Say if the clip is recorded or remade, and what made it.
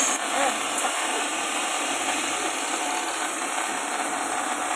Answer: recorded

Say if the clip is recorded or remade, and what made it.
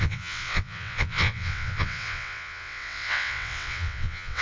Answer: remade, vocoder, WaveNeXt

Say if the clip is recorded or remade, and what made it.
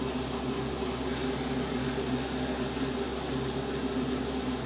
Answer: recorded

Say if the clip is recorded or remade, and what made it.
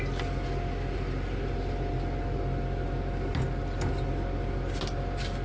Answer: recorded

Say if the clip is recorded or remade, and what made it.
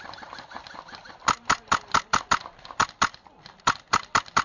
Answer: recorded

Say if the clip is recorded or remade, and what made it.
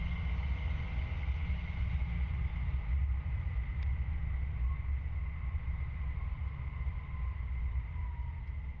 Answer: recorded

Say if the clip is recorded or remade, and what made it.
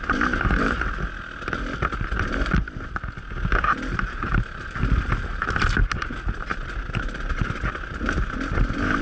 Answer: recorded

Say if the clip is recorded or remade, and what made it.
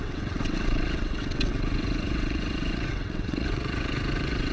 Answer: remade, vocoder, WaveNeXt